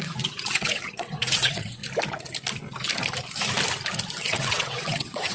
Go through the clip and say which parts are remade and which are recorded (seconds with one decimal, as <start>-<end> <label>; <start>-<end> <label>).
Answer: 0.0-1.8 remade; 1.8-4.2 recorded; 4.2-5.3 remade